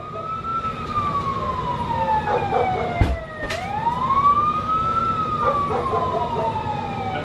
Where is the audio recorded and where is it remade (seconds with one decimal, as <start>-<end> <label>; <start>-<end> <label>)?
0.0-4.3 recorded; 4.3-5.0 remade; 5.0-7.2 recorded